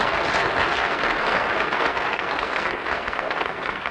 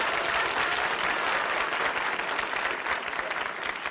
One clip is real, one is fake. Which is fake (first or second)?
first